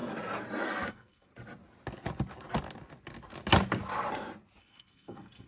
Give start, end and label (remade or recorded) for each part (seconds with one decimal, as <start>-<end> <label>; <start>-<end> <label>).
0.0-0.9 recorded; 0.9-1.3 remade; 1.3-4.6 recorded; 4.6-5.5 remade